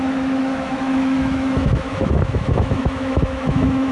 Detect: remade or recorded remade